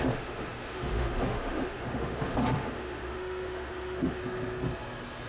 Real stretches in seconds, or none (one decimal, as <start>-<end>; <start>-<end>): 4.2-5.3